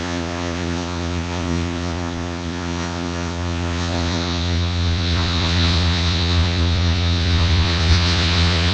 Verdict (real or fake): fake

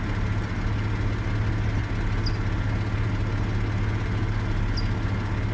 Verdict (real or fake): real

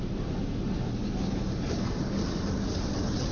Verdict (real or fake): real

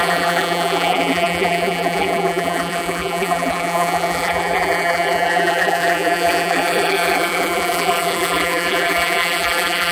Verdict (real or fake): fake